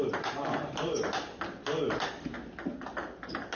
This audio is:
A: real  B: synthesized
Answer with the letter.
A